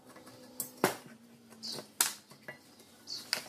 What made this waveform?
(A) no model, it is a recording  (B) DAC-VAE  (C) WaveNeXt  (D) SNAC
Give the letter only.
A